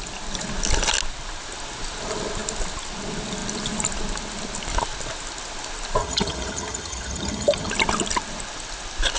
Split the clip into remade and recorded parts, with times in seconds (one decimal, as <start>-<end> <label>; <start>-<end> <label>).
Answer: 0.0-6.0 recorded; 6.0-7.7 remade; 7.7-9.2 recorded